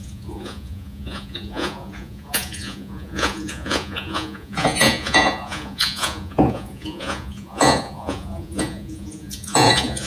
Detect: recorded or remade remade